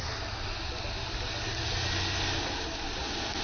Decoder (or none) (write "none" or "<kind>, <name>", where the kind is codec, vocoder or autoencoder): none